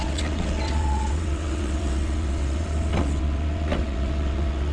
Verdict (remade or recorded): remade